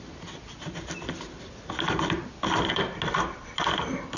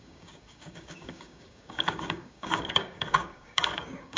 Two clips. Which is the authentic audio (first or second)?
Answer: first